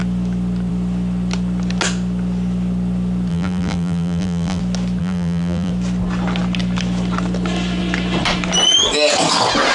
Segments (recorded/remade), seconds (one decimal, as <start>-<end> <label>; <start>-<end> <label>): 0.0-3.3 recorded; 3.3-4.6 remade; 4.6-5.0 recorded; 5.0-5.7 remade; 5.7-9.7 recorded